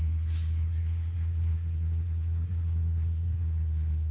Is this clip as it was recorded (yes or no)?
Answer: no